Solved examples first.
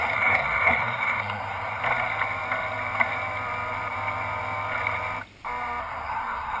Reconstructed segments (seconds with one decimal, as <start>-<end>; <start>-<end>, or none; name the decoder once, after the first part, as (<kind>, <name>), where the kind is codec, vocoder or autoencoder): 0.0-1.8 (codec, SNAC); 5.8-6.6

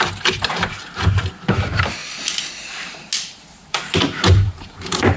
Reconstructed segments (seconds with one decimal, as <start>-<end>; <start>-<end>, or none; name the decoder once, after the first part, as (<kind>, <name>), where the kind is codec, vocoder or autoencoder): 0.0-2.0 (vocoder, BigVGAN v2); 3.5-5.2

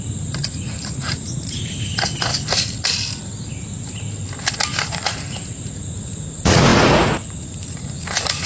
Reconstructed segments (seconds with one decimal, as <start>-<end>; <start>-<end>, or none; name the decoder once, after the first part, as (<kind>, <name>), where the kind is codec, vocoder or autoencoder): 0.0-2.3 (vocoder, Vocos); 4.9-8.5

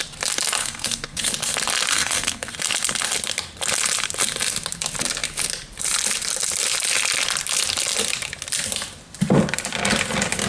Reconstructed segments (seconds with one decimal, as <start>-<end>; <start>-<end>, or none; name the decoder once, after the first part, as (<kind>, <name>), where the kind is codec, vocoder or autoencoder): 0.6-1.3 (codec, SNAC); 1.9-2.5